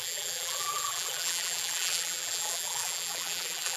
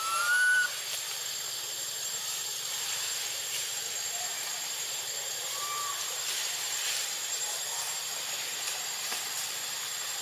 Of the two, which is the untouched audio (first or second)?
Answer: second